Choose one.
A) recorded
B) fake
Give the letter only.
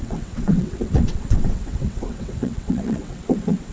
B